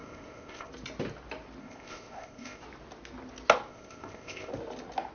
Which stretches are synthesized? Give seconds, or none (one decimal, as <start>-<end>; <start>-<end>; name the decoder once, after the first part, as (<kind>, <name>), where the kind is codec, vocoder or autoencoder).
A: 0.0-0.7 (codec, ZipCodec); 1.6-2.6; 3.7-4.5